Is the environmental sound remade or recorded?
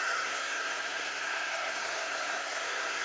remade